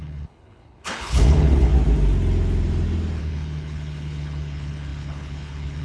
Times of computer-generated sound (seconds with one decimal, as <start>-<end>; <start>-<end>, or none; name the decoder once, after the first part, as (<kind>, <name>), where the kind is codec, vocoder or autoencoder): 0.0-1.7 (codec, HILCodec); 3.2-5.8